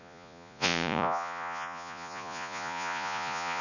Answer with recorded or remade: remade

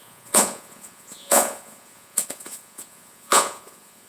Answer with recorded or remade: remade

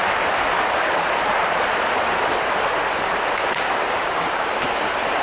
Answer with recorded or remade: recorded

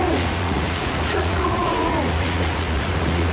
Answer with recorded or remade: remade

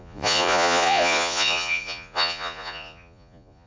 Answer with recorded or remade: remade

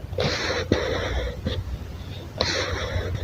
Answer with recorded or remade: recorded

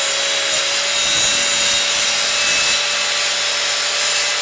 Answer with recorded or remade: recorded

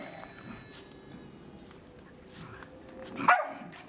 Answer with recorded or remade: recorded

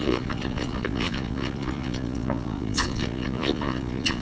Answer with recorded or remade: remade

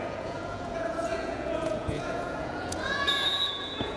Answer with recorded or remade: remade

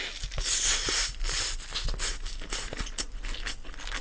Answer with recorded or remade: recorded